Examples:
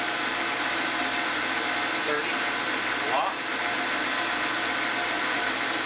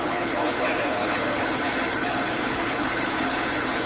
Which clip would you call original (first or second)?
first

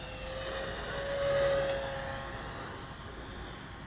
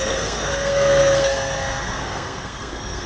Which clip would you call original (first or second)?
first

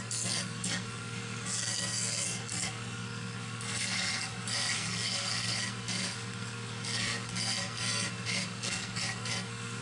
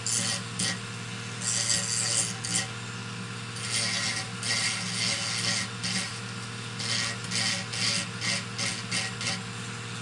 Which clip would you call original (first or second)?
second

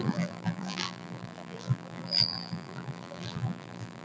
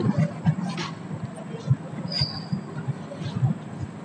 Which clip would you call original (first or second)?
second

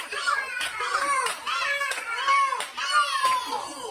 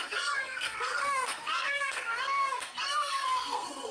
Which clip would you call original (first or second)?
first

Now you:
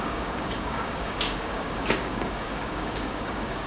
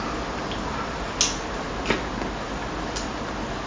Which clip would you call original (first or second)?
second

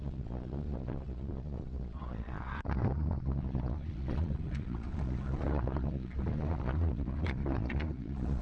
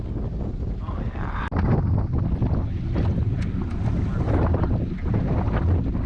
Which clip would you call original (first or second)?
second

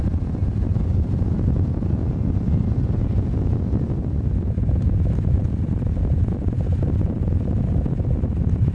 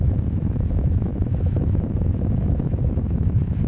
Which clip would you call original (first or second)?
first